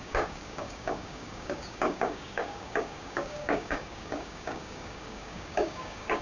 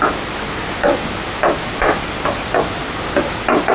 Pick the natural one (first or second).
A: second